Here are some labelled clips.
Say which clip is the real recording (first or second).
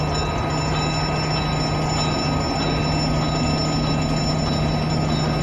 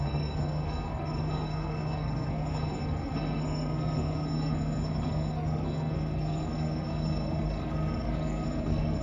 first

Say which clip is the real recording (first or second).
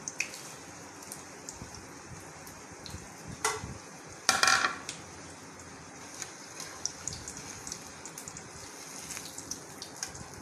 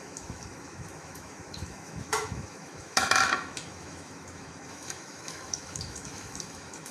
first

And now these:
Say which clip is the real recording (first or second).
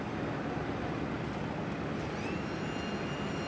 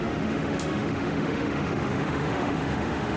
first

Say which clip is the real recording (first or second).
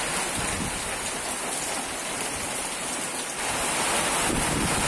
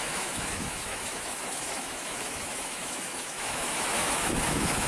first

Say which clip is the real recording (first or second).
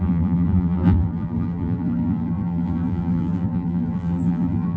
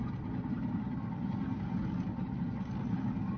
second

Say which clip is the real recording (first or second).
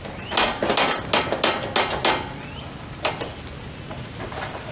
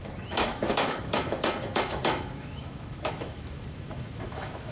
first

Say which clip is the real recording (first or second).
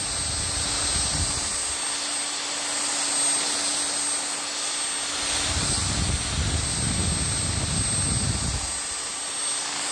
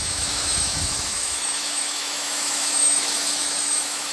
first